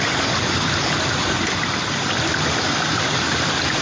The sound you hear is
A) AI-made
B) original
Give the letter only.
B